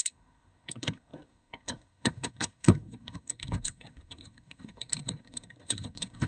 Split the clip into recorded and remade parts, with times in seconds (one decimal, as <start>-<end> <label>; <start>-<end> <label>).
0.0-6.3 remade